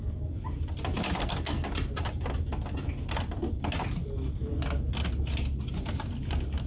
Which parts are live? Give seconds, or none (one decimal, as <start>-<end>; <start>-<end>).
0.0-1.2; 1.7-6.7